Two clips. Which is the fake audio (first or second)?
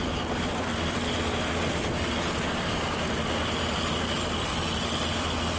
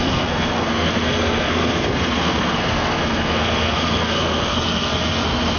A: second